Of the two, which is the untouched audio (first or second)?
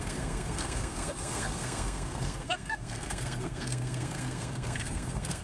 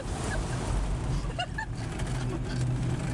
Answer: second